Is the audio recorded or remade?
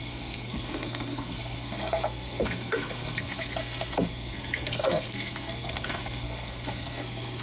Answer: remade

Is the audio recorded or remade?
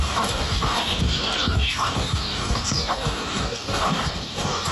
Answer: remade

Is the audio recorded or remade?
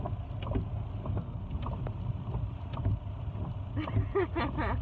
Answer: recorded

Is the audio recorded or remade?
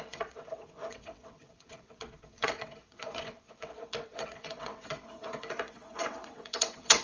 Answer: remade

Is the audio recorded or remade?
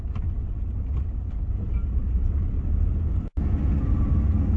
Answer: recorded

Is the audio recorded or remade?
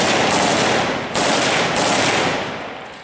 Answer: recorded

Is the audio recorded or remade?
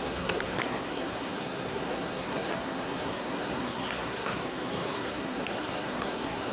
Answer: remade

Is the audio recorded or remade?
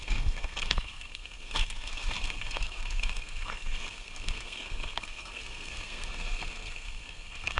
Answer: remade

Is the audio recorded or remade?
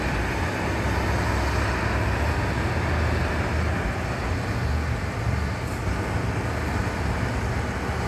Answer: recorded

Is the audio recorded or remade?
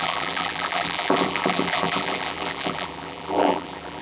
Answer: remade